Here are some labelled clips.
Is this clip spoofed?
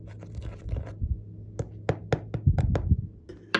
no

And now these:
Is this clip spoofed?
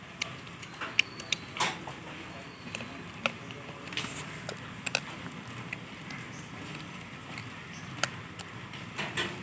no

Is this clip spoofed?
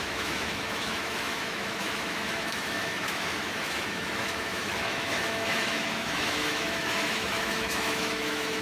yes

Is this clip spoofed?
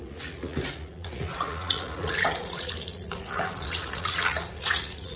yes